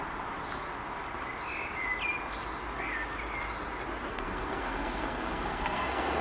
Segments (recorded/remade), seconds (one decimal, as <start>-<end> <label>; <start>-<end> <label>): 0.0-4.1 recorded; 4.1-6.2 remade